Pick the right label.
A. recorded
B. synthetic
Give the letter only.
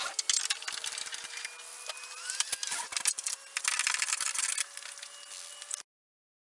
A